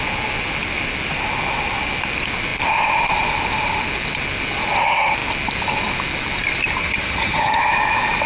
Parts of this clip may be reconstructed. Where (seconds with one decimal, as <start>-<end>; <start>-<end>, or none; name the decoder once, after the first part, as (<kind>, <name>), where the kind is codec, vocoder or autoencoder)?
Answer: 6.8-7.7 (vocoder, HiFi-GAN)